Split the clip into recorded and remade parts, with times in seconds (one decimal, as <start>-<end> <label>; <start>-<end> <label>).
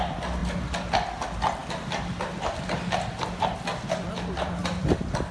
0.0-5.3 recorded